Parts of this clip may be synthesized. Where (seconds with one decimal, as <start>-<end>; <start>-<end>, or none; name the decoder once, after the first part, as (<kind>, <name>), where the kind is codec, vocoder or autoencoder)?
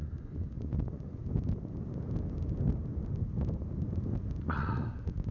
0.0-1.2 (vocoder, Vocos); 4.4-5.3